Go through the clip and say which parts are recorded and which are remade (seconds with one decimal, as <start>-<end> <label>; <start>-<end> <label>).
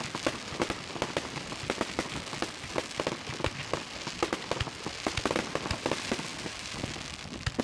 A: 0.0-7.6 recorded